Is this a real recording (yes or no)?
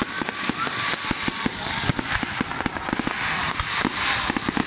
yes